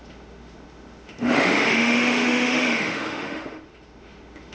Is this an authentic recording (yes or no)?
no